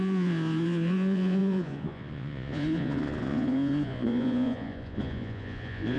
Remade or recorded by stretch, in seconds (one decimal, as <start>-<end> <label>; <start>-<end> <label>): 0.0-6.0 remade